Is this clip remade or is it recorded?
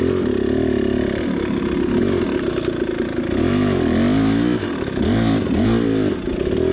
recorded